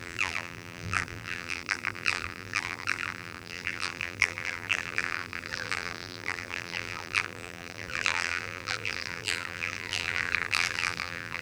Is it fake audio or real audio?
fake